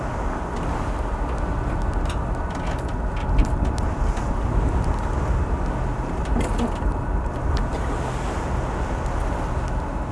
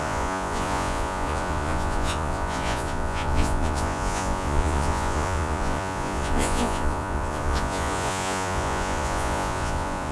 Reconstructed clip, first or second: second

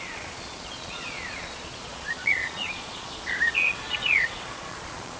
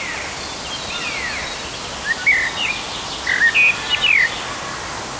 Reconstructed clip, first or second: first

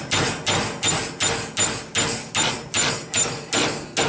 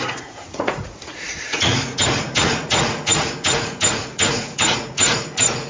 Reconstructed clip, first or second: second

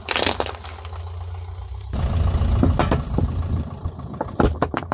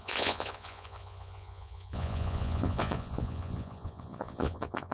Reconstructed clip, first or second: second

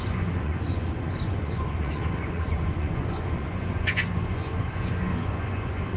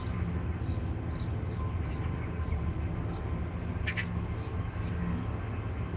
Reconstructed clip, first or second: first